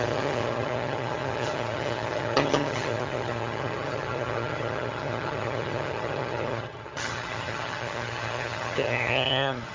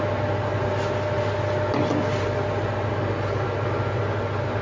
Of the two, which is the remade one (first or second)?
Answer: first